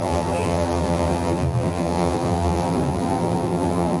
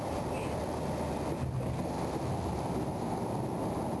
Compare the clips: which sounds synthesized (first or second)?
first